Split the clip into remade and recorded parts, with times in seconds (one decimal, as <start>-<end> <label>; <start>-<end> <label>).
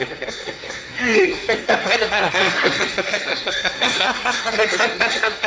0.0-5.5 remade